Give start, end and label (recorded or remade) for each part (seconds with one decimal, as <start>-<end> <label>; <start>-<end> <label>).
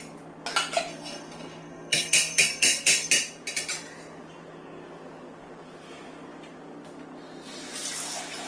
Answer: 0.0-0.9 recorded; 0.9-3.1 remade; 3.1-8.5 recorded